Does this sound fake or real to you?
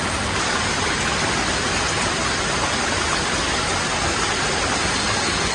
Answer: real